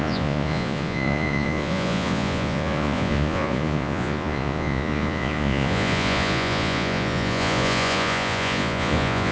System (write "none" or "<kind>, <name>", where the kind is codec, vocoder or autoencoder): vocoder, Vocos